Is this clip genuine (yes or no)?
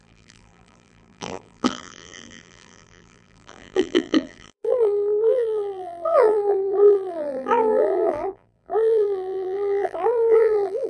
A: no